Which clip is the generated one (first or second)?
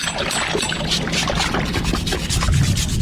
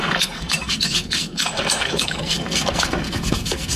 second